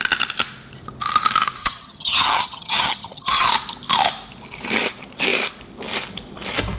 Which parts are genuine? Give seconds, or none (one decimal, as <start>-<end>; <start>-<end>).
0.0-1.6; 3.5-6.8